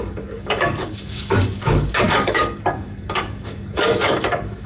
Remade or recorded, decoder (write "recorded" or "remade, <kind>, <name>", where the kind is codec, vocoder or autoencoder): remade, codec, DAC